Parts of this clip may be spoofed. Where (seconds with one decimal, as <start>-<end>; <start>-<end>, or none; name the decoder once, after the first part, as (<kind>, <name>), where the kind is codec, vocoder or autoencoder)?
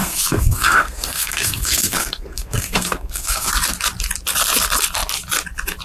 0.0-3.5 (codec, SNAC)